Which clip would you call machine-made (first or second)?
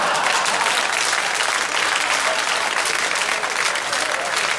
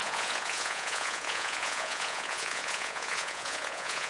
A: second